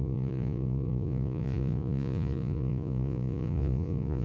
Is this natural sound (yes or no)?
no